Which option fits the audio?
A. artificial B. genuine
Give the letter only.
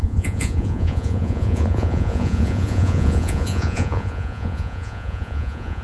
A